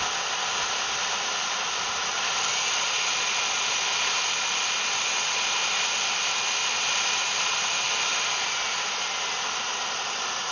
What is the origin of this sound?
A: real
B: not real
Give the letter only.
A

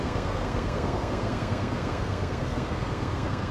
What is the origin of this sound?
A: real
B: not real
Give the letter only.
B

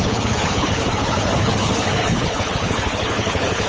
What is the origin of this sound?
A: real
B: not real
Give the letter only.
B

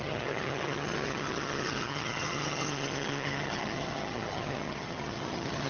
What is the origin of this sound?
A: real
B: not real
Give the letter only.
B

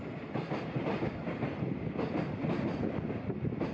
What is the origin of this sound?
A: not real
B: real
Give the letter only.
B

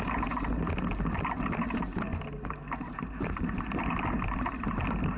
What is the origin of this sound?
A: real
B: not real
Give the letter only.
A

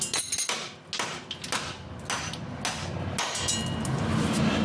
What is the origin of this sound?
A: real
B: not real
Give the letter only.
A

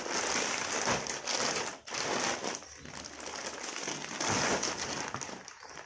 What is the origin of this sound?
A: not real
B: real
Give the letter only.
B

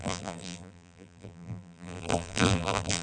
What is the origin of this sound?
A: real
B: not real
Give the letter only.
B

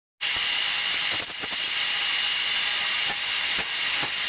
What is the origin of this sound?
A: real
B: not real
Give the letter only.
A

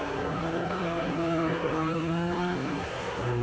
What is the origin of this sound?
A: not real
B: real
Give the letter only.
A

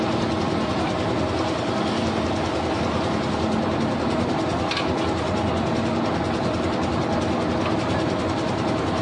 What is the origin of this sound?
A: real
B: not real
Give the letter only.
A